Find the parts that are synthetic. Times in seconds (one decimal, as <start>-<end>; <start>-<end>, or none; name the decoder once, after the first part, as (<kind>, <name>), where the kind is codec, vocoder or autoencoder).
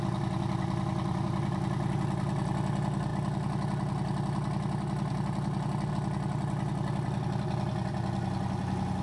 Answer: none